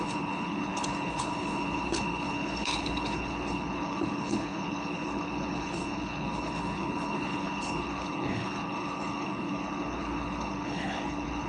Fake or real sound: fake